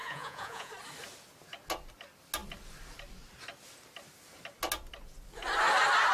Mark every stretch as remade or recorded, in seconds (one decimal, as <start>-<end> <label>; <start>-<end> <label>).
0.0-0.7 remade; 0.7-6.1 recorded